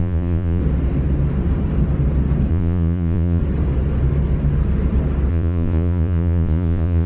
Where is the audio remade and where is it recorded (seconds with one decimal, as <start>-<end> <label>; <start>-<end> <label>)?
0.0-0.6 remade; 0.6-2.5 recorded; 2.5-3.4 remade; 3.4-5.3 recorded; 5.3-7.1 remade